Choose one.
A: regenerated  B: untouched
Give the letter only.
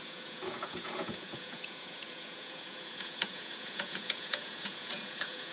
A